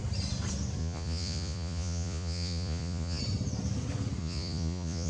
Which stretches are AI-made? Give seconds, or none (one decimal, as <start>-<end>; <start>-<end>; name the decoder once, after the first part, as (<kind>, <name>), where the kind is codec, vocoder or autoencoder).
0.8-3.2 (vocoder, Vocos); 4.2-5.1